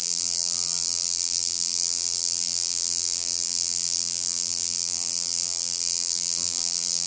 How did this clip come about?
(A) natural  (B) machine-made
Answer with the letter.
B